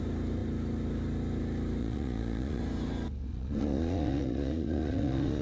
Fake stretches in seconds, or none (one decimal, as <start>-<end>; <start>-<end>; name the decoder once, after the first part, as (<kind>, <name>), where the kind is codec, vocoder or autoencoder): 1.8-2.6 (vocoder, Vocos); 3.3-5.4